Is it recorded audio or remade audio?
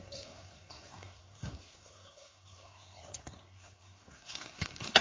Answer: remade